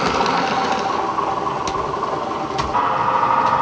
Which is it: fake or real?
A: real